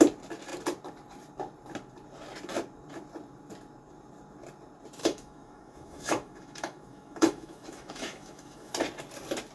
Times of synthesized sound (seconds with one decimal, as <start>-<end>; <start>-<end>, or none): 5.0-8.7